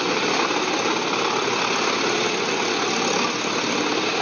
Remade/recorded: recorded